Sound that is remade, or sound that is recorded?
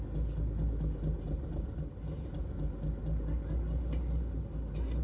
recorded